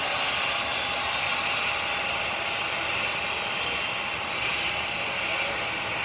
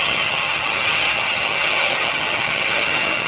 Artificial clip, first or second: second